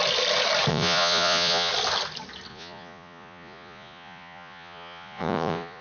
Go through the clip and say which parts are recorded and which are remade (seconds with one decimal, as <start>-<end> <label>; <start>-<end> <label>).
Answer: 0.0-0.7 recorded; 0.7-1.7 remade; 1.7-2.5 recorded; 2.5-5.8 remade